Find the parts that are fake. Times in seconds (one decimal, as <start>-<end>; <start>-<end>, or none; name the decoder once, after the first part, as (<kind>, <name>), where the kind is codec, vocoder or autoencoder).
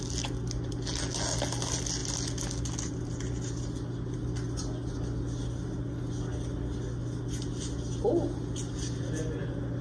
none